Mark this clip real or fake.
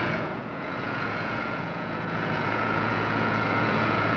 fake